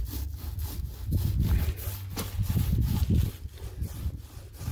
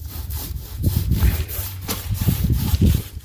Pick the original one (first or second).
first